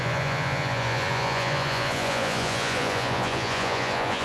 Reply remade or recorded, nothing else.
remade